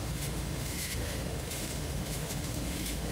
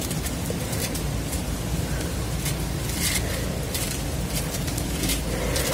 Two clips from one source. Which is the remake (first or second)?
first